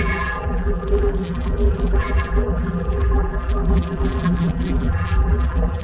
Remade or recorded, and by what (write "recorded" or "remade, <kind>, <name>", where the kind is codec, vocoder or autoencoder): remade, vocoder, BigVGAN v2